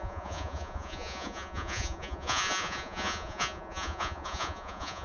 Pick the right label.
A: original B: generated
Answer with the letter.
B